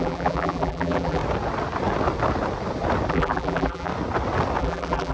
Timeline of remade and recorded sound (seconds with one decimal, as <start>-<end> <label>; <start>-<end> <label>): 0.0-1.2 remade; 1.2-3.1 recorded; 3.1-3.9 remade; 3.9-4.6 recorded; 4.6-5.1 remade